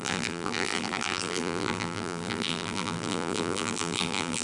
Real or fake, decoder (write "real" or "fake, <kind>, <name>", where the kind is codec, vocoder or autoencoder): fake, vocoder, BigVGAN v2